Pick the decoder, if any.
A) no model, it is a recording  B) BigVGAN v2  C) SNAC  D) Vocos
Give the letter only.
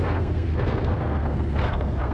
C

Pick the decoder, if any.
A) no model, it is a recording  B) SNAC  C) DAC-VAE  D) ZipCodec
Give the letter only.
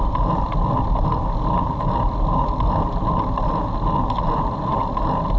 A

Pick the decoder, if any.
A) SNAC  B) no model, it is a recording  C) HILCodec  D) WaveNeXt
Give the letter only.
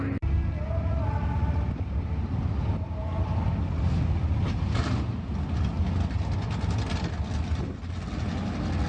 B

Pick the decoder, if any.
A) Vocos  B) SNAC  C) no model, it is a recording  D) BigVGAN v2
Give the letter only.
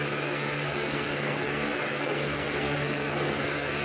B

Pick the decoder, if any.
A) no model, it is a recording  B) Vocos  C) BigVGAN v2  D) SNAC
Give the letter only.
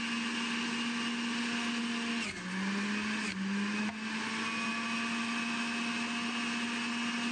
A